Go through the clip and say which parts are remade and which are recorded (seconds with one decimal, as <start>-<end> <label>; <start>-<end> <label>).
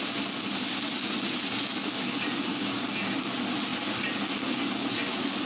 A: 0.0-5.5 recorded